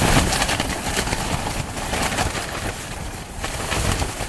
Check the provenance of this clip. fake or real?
real